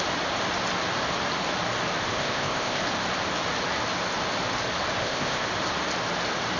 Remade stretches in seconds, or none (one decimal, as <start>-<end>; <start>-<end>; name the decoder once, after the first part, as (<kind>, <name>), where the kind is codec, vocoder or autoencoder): 2.1-2.8 (codec, ZipCodec); 5.0-5.5